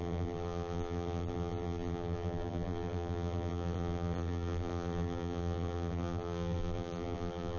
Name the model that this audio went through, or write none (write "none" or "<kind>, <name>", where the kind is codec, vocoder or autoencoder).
vocoder, BigVGAN v2